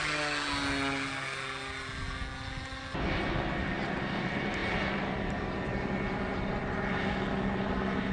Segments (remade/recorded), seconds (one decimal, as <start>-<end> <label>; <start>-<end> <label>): 0.0-8.1 recorded